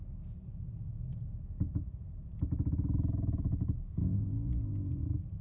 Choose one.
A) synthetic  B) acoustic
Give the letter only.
B